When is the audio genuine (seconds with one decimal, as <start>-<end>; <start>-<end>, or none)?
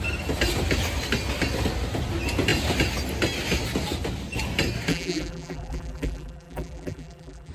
0.0-4.9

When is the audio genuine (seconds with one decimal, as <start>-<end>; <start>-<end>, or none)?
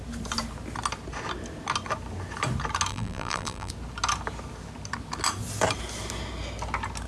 0.0-2.9; 3.7-7.1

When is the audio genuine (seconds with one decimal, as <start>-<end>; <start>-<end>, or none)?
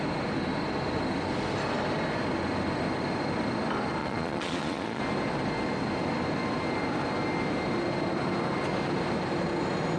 0.0-4.0; 5.0-10.0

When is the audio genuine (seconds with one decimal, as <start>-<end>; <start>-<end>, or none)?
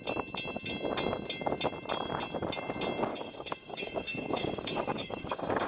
0.0-3.1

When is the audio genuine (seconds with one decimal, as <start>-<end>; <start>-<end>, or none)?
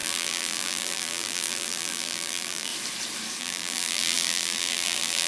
2.7-3.4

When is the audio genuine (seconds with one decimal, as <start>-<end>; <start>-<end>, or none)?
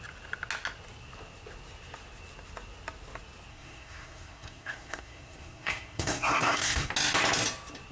0.0-3.5; 6.9-7.9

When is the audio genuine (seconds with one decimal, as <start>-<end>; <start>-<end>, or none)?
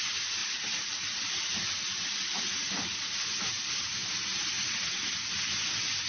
0.0-0.4; 1.7-6.1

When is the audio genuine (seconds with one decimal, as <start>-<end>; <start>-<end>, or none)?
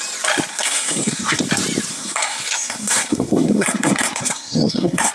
0.0-0.5; 1.4-1.9